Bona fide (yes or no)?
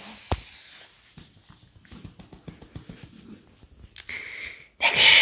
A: yes